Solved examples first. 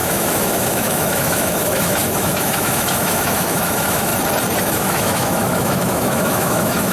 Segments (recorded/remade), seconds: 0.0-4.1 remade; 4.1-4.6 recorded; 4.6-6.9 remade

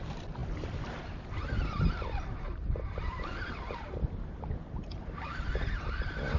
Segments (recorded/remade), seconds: 0.0-6.4 recorded